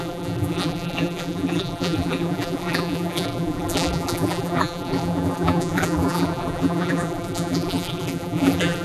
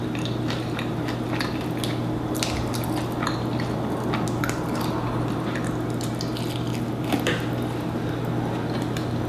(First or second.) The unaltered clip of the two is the second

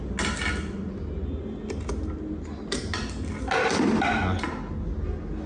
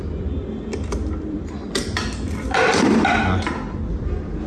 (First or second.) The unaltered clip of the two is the first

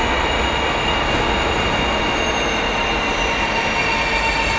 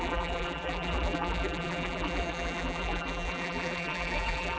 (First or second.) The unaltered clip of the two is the first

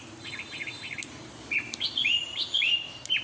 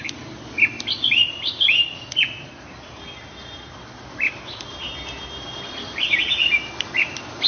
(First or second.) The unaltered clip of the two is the second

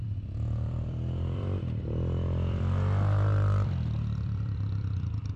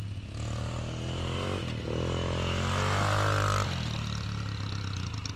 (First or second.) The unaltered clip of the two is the second